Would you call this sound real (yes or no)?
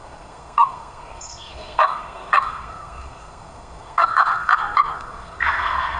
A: no